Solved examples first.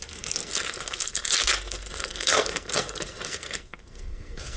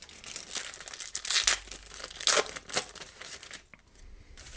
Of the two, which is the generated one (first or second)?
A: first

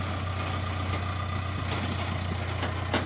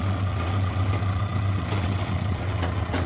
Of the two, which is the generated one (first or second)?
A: second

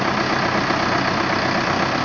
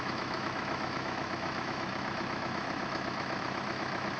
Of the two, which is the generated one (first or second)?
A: second